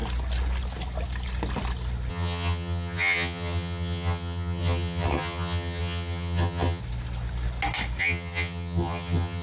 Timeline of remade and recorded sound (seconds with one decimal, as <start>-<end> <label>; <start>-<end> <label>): 0.0-2.1 recorded; 2.1-6.8 remade; 6.8-8.0 recorded; 8.0-9.4 remade